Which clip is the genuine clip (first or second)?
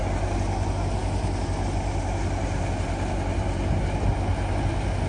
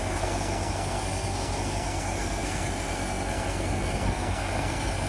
first